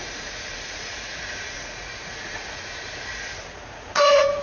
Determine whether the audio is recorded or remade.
remade